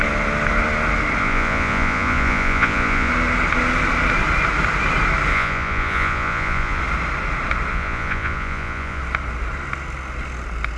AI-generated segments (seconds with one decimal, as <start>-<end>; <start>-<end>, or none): 1.2-3.1; 5.3-6.8; 7.7-9.0